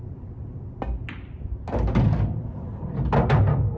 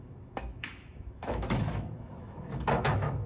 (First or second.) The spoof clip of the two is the second